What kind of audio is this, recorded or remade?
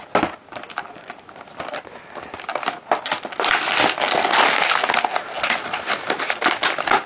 recorded